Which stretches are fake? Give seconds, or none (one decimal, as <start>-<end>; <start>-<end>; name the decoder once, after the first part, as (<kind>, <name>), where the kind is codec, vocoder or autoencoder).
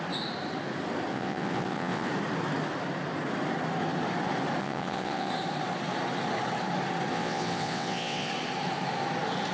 1.1-2.1 (vocoder, WaveNeXt); 4.6-5.3; 7.1-8.3